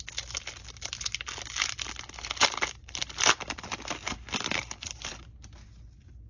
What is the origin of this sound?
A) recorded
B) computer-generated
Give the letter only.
A